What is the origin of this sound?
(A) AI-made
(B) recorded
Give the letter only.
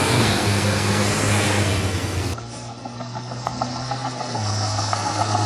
A